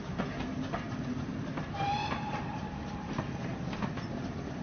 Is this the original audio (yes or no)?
no